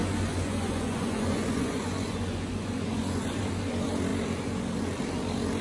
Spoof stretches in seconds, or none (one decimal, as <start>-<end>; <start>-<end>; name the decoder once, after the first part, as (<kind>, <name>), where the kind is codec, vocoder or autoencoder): 0.0-3.4 (vocoder, Vocos)